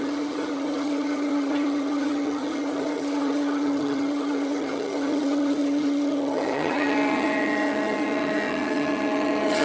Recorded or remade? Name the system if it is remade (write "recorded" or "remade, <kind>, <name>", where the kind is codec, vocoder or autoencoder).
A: remade, vocoder, HiFi-GAN